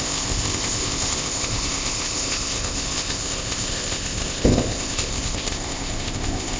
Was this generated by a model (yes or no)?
yes